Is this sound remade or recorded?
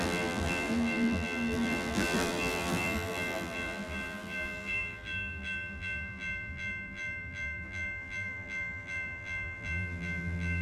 remade